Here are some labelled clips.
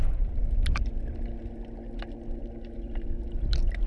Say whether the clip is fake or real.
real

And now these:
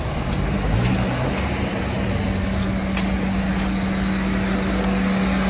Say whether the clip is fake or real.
real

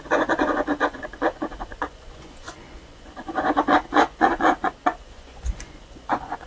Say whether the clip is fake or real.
fake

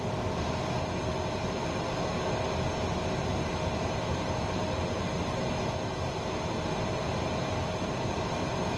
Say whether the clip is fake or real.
real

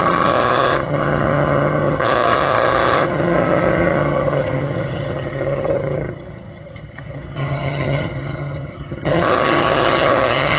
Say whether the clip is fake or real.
fake